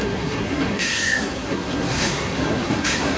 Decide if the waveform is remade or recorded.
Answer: remade